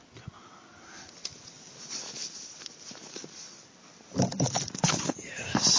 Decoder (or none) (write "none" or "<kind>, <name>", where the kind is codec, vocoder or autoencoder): none